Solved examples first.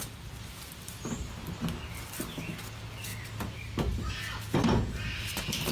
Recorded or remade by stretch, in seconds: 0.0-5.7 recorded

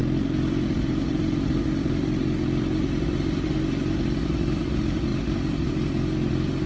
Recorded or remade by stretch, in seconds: 0.0-4.0 remade; 4.0-5.1 recorded; 5.1-5.7 remade; 5.7-6.7 recorded

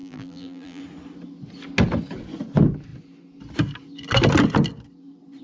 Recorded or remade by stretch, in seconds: 0.0-0.8 remade; 0.8-5.4 recorded

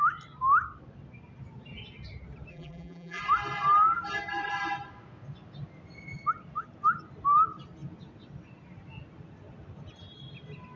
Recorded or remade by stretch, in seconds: 0.0-2.5 recorded; 2.5-3.2 remade; 3.2-10.8 recorded

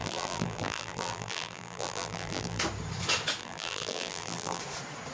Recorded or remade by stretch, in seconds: 0.0-2.6 remade; 2.6-3.4 recorded; 3.4-4.6 remade; 4.6-5.1 recorded

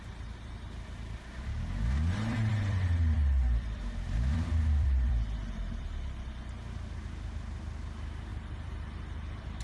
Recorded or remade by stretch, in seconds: 0.0-2.5 recorded; 2.5-5.9 remade; 5.9-8.3 recorded; 8.3-9.6 remade

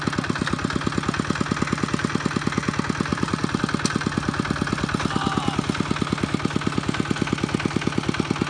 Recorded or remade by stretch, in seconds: 0.0-3.1 recorded; 3.1-3.6 remade; 3.6-8.5 recorded